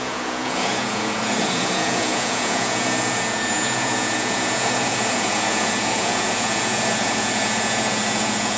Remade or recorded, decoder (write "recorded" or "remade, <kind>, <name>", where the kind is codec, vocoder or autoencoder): remade, vocoder, Vocos